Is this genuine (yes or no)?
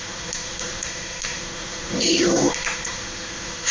no